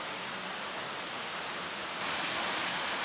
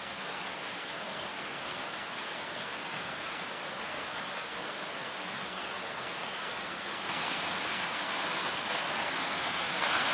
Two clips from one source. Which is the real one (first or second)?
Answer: first